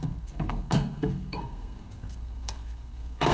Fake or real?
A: fake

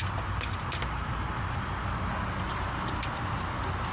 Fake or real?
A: real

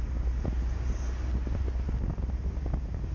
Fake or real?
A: real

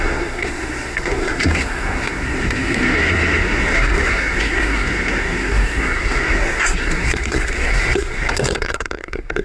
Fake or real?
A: fake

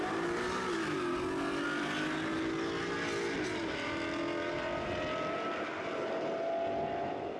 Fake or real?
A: real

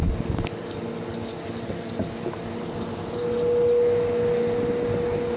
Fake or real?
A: real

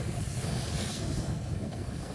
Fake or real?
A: fake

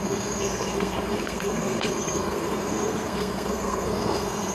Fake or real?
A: fake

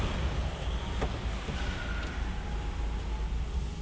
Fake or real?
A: real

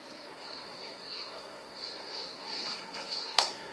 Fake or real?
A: fake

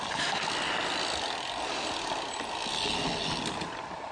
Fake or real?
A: real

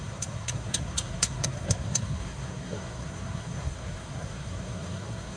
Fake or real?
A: fake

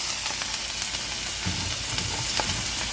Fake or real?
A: real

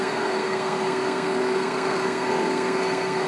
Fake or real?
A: fake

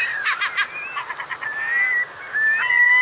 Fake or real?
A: real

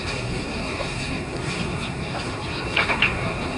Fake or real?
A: fake